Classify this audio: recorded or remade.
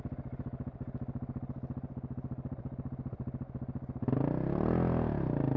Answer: recorded